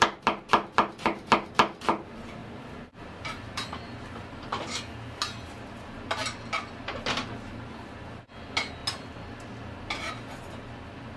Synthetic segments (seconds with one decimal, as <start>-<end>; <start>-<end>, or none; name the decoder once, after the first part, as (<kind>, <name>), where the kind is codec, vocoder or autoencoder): 2.4-4.5 (vocoder, BigVGAN v2)